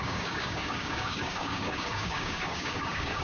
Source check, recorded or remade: remade